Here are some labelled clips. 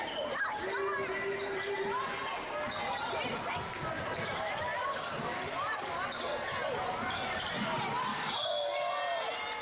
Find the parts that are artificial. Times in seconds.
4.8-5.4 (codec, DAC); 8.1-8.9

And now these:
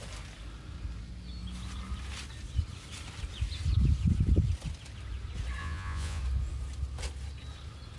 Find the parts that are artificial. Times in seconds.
5.6-6.2 (vocoder, Vocos)

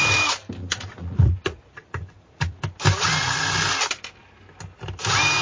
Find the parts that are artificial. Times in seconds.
0.6-2.6 (vocoder, Vocos)

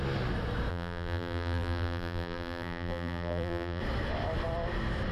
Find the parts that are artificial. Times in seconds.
0.7-3.8 (vocoder, BigVGAN v2)

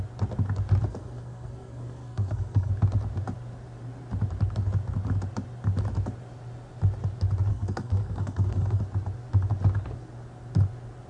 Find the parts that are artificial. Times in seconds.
0.9-2.7 (codec, SNAC); 7.5-8.8

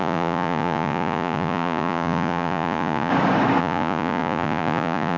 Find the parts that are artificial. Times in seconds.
0.0-3.1 (vocoder, Vocos); 3.6-5.2

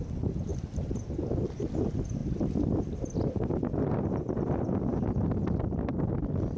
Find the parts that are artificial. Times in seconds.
2.2-2.9 (vocoder, BigVGAN v2)